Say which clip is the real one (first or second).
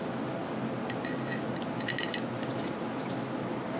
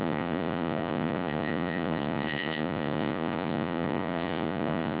first